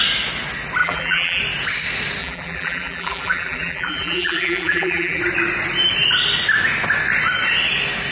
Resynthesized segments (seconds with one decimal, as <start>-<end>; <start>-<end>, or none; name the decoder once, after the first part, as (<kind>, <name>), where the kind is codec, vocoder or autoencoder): 0.8-1.4 (vocoder, BigVGAN v2); 2.2-5.2